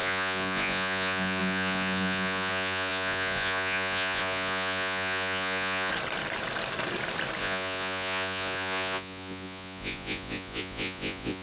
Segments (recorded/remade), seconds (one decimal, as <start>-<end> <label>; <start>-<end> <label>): 0.0-5.9 remade; 5.9-7.4 recorded; 7.4-11.4 remade